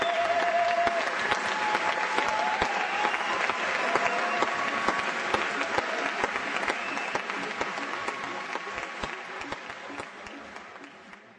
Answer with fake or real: real